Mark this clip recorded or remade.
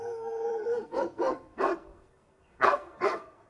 remade